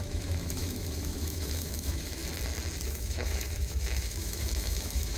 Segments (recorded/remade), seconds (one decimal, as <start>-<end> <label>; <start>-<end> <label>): 0.0-2.2 remade; 2.2-2.9 recorded; 2.9-5.2 remade